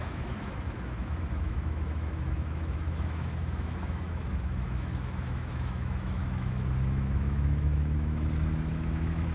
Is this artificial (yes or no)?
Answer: yes